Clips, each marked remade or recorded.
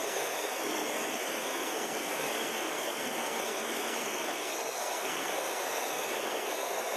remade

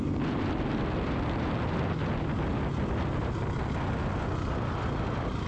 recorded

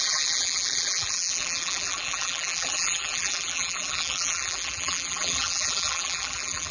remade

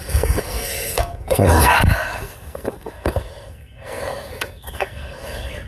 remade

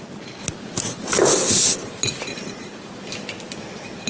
recorded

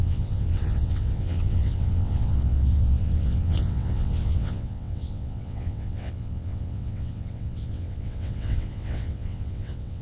remade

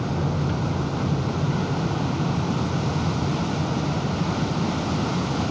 recorded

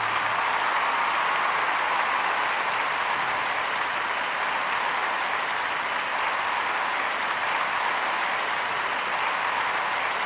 recorded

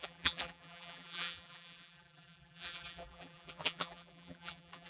remade